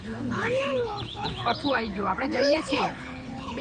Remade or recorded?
remade